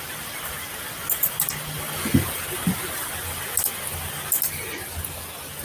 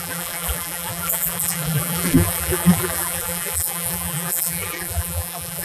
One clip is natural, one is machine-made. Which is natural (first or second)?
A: first